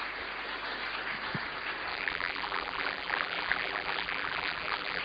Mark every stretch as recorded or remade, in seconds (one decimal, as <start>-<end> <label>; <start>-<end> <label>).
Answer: 0.0-1.9 recorded; 1.9-5.0 remade